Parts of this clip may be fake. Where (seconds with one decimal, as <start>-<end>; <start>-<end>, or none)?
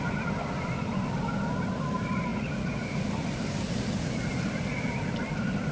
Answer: 2.3-3.0